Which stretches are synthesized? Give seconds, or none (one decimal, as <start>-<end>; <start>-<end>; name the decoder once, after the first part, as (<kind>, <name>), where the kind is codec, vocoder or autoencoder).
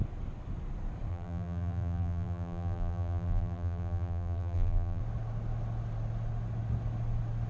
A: 1.1-5.0 (vocoder, BigVGAN v2)